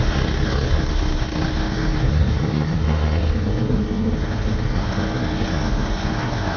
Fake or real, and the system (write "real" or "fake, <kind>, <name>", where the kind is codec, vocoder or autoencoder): fake, codec, SNAC